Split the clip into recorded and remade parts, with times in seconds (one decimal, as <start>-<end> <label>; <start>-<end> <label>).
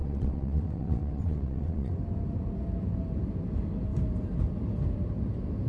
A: 0.0-1.9 remade; 1.9-5.7 recorded